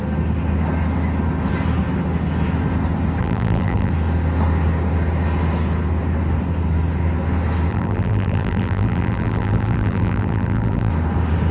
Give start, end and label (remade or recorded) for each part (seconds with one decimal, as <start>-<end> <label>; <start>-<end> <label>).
0.0-3.2 recorded; 3.2-3.9 remade; 3.9-7.7 recorded; 7.7-10.9 remade; 10.9-11.5 recorded